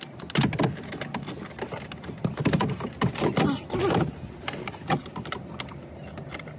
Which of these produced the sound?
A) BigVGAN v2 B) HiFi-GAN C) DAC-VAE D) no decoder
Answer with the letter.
D